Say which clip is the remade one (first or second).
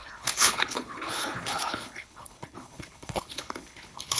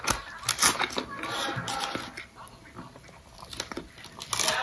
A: first